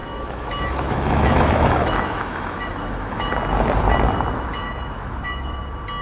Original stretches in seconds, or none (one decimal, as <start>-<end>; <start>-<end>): 3.3-4.5; 5.6-6.0